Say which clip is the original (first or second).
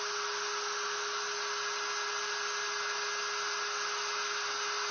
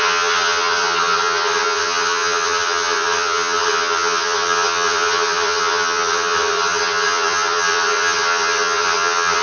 first